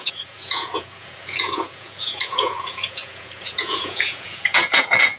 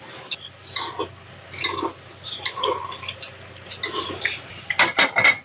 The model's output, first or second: first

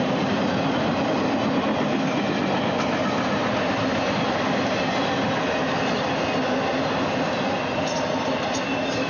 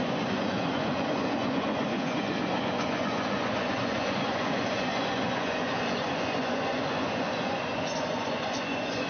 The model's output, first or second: second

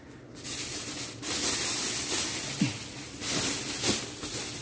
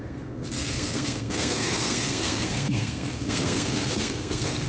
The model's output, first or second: second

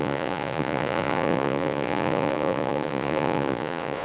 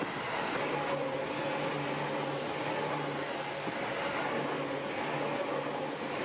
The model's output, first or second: first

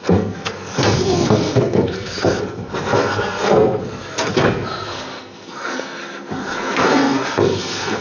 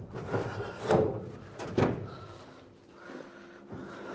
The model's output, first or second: first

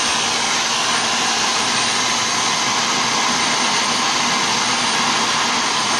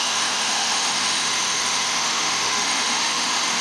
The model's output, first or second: second